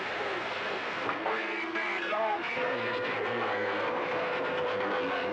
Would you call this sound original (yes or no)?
no